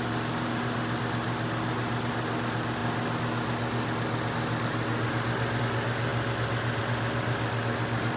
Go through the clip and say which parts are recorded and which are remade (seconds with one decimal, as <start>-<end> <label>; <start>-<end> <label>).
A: 0.0-8.2 recorded